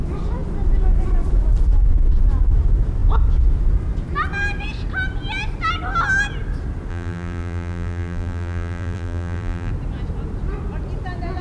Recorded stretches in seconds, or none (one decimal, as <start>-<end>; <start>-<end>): 0.0-6.9; 9.7-11.4